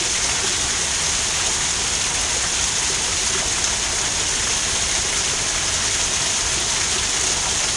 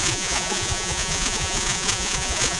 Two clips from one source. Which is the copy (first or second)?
second